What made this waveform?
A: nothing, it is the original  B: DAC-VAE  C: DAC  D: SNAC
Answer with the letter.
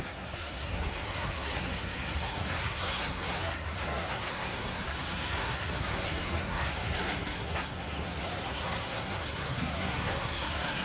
D